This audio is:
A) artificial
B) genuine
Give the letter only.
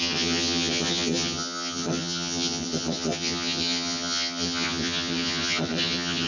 A